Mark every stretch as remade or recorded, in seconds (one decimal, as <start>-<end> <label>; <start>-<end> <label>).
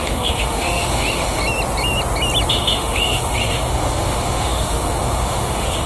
0.0-1.4 remade; 1.4-2.5 recorded; 2.5-5.9 remade